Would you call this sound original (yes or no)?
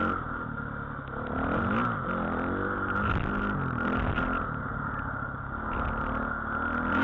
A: yes